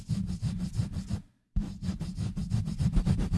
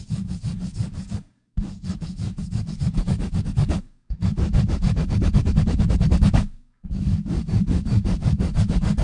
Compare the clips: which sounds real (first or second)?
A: first